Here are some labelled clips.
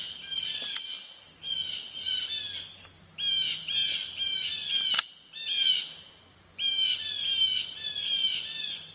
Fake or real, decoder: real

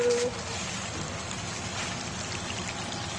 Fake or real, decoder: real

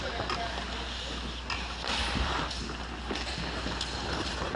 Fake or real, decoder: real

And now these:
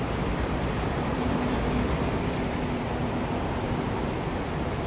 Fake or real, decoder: real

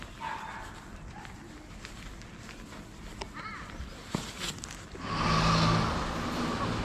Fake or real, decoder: real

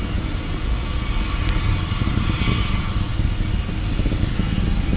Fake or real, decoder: real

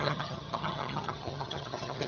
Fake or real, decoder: fake, vocoder, HiFi-GAN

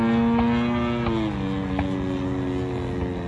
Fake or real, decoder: real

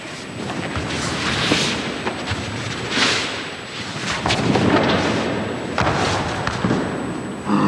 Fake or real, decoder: real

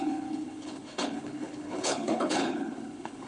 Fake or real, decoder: fake, codec, HILCodec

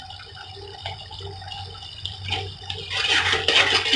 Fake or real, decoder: real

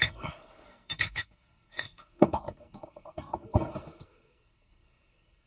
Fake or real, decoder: fake, codec, SNAC